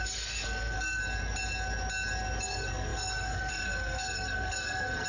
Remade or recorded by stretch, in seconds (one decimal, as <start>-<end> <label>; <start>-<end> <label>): 0.0-1.0 remade; 1.0-2.4 recorded; 2.4-5.1 remade